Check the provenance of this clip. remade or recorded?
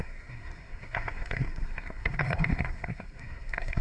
remade